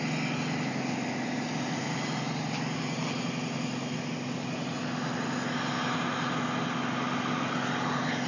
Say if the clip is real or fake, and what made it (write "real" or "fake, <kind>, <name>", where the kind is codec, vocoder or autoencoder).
real